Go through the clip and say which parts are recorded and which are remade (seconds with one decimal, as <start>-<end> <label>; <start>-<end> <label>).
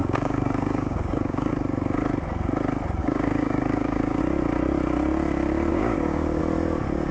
0.0-1.5 remade; 1.5-3.0 recorded; 3.0-4.2 remade; 4.2-5.7 recorded; 5.7-6.4 remade; 6.4-7.1 recorded